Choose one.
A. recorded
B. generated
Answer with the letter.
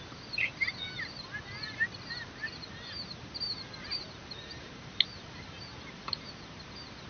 A